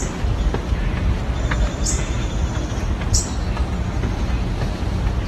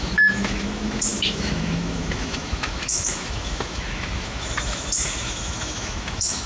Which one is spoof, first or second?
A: second